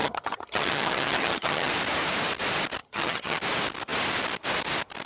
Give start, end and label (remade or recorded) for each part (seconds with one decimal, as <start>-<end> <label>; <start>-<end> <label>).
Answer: 0.0-1.7 remade; 1.7-2.8 recorded; 2.8-3.4 remade; 3.4-5.1 recorded